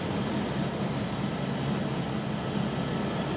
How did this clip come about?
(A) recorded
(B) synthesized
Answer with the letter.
A